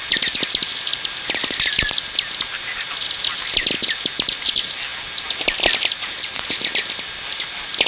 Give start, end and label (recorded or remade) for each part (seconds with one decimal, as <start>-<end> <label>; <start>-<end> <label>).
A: 0.0-7.9 recorded